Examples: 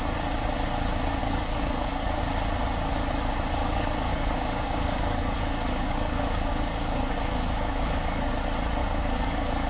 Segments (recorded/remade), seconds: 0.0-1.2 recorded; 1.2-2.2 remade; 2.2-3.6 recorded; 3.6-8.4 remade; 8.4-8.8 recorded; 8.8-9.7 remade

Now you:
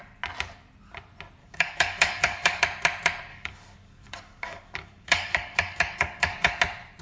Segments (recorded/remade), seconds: 0.0-1.4 recorded; 1.4-2.6 remade; 2.6-3.3 recorded; 3.3-6.6 remade; 6.6-7.0 recorded

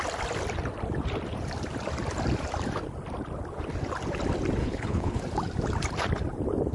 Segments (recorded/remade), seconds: 0.0-4.6 recorded; 4.6-5.2 remade; 5.2-6.7 recorded